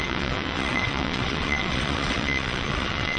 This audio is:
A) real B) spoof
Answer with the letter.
B